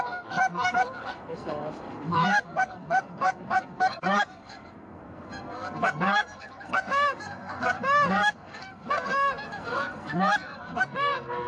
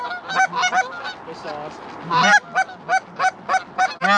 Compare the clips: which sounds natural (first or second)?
second